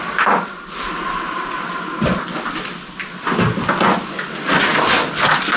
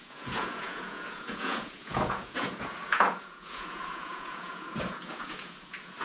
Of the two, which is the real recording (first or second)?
first